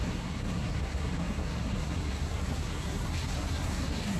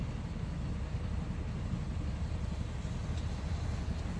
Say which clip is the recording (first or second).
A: second